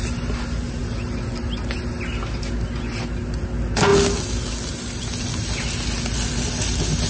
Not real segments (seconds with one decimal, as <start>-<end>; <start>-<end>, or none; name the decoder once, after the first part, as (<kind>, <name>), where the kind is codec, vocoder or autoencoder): none